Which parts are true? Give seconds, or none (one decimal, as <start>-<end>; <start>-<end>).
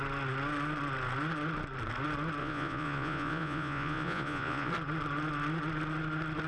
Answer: 0.0-2.4; 4.7-6.5